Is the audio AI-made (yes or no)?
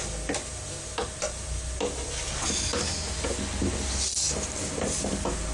no